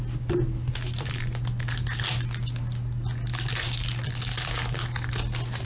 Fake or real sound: real